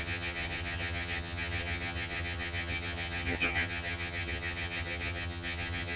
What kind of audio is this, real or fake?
fake